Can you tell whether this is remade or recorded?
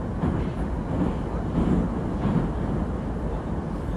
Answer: recorded